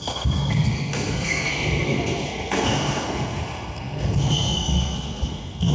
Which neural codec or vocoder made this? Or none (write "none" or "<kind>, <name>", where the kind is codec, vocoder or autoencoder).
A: codec, SNAC